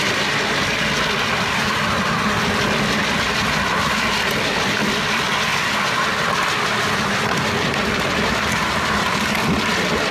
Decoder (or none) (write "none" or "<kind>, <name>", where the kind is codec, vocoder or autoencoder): none